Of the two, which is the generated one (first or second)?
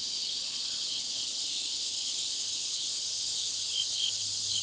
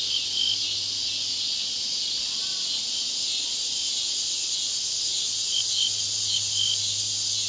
first